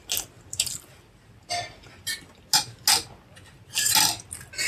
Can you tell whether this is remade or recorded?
recorded